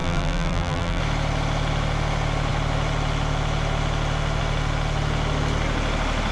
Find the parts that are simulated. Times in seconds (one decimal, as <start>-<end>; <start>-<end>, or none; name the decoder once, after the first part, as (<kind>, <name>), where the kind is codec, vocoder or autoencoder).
0.0-1.0 (vocoder, BigVGAN v2)